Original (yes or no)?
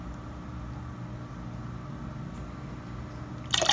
yes